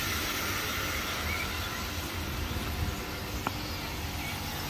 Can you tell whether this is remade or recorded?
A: recorded